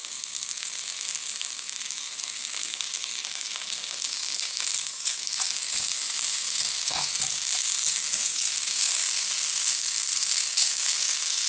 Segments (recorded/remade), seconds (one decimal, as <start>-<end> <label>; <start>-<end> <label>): 0.0-11.5 remade